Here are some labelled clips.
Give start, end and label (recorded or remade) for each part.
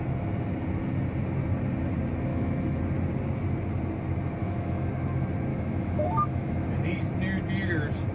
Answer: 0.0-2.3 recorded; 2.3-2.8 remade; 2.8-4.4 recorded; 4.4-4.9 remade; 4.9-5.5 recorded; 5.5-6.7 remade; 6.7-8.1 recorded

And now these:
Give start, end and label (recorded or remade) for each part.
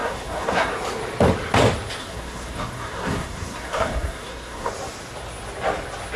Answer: 0.0-0.7 remade; 0.7-2.0 recorded; 2.0-4.7 remade; 4.7-6.2 recorded